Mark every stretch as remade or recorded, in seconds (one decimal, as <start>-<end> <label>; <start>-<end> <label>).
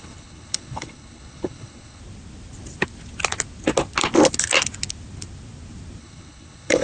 0.0-2.0 remade; 2.0-6.0 recorded; 6.0-6.8 remade